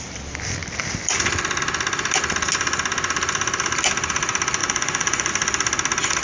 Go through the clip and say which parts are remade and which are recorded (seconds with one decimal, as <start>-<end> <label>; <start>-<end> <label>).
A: 0.0-4.6 recorded; 4.6-5.3 remade; 5.3-6.2 recorded